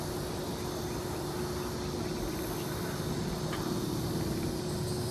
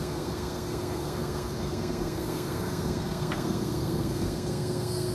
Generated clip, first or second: second